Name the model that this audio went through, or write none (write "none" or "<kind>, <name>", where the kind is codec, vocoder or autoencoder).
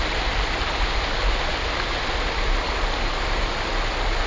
none